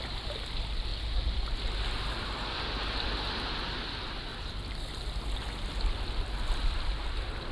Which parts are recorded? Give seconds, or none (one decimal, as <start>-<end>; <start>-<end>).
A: 0.0-7.5